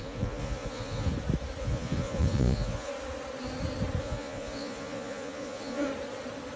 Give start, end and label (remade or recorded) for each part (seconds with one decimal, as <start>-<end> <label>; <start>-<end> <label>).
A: 0.0-1.1 remade; 1.1-1.6 recorded; 1.6-2.9 remade; 2.9-4.0 recorded; 4.0-5.9 remade; 5.9-6.6 recorded